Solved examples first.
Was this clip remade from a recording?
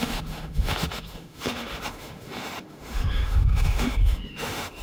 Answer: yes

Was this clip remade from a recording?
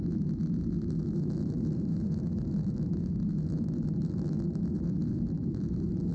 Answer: yes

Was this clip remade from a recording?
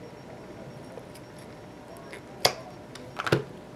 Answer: no